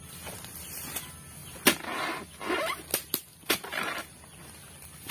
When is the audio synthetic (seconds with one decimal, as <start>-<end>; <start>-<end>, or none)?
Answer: none